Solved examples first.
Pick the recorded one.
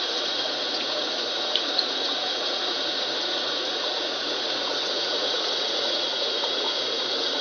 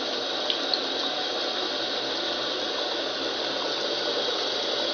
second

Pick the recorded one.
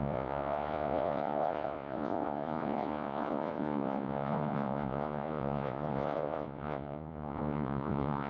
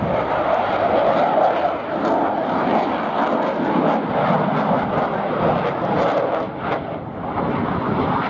second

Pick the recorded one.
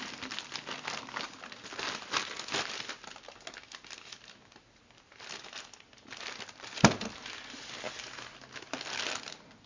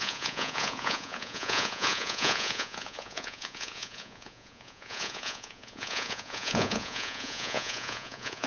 first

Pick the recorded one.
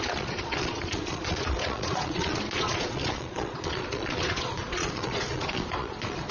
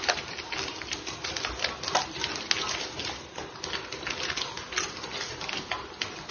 second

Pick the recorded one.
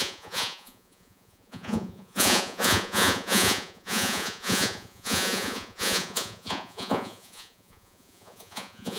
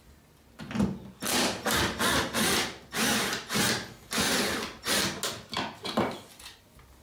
second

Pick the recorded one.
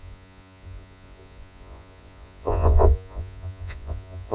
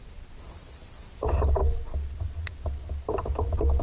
second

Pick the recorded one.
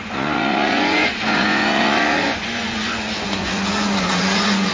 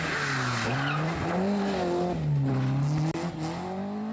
second